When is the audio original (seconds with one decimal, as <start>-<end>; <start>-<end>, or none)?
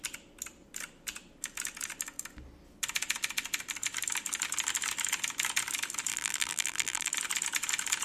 0.0-6.1; 7.1-8.0